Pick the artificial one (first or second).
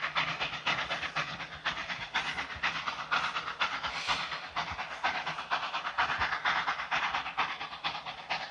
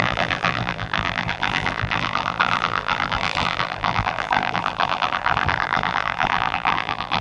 second